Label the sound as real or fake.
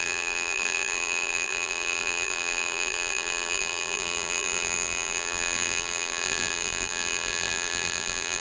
fake